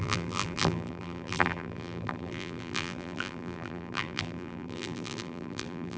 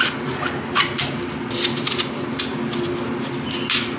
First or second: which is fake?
first